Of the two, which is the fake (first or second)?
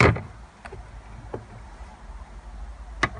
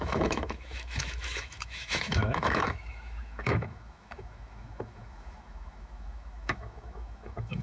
second